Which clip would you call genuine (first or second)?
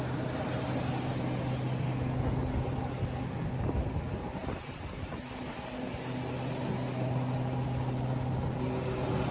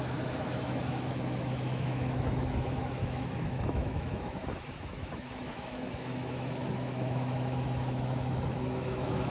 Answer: first